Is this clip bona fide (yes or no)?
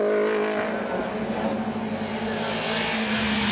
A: yes